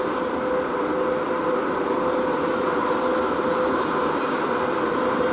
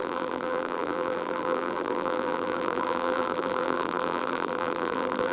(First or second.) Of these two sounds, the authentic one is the first